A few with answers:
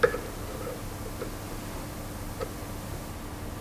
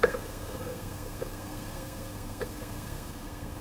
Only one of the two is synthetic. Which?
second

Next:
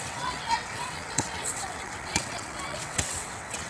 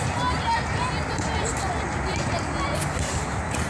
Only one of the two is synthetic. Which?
first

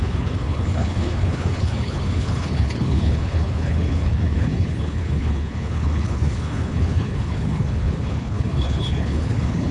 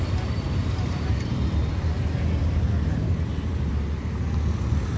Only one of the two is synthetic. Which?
first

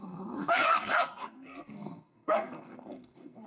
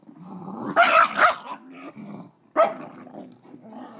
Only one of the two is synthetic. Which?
first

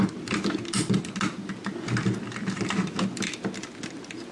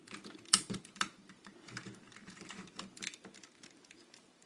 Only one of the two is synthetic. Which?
second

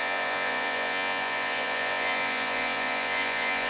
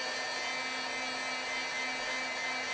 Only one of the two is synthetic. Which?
first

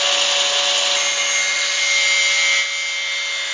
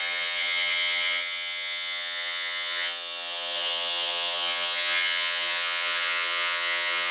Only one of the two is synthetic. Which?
second